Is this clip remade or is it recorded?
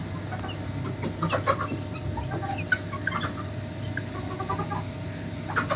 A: recorded